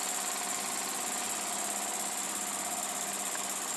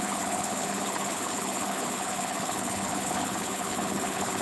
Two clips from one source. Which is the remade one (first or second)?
second